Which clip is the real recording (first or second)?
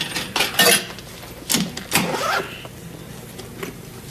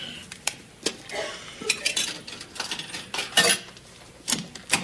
first